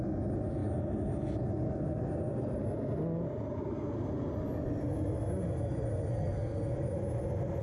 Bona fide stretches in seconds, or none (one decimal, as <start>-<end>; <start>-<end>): 0.0-6.1; 6.7-7.6